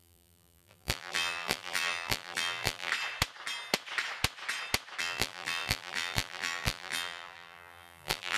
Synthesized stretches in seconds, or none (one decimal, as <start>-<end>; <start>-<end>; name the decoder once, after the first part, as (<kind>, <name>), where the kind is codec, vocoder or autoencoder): 0.0-2.9 (vocoder, BigVGAN v2); 5.0-8.4